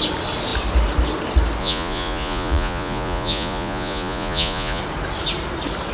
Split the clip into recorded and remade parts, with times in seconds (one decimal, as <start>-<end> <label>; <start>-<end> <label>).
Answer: 0.0-1.6 recorded; 1.6-4.8 remade; 4.8-5.9 recorded